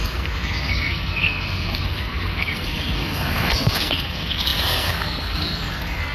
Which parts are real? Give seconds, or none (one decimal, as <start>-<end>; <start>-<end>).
none